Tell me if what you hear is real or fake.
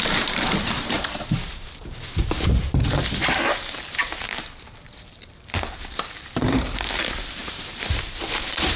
fake